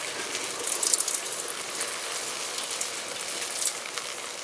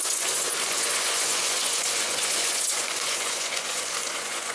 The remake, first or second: second